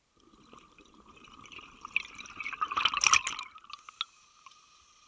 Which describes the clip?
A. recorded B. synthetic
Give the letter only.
A